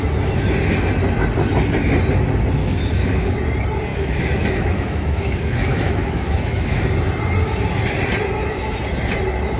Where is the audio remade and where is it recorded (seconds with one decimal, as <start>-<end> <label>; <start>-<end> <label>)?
0.0-2.6 recorded; 2.6-3.3 remade; 3.3-3.9 recorded; 3.9-6.8 remade; 6.8-9.6 recorded